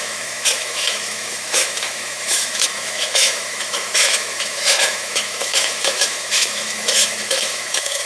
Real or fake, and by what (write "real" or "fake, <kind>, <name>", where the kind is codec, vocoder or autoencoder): fake, autoencoder, DAC-VAE